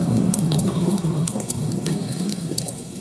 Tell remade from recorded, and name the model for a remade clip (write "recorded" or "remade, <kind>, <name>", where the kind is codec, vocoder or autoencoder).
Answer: remade, codec, SNAC